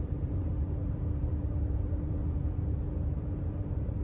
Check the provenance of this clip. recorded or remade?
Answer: remade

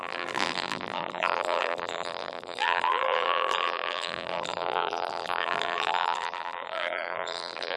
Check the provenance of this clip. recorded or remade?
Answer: remade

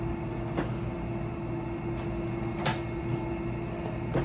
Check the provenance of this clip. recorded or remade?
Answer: recorded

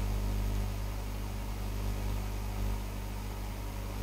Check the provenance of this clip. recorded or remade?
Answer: recorded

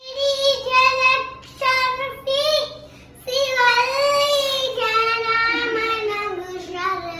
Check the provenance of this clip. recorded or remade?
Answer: recorded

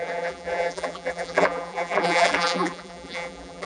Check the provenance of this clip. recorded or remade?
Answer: remade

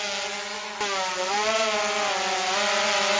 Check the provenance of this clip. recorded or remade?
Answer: recorded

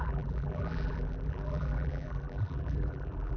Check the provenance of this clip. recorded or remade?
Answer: remade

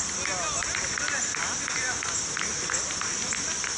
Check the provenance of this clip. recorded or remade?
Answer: recorded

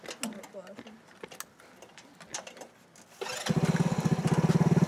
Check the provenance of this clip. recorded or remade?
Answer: recorded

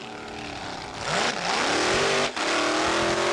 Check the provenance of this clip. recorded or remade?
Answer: recorded